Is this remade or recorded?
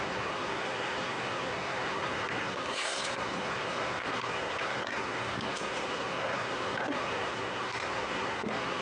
remade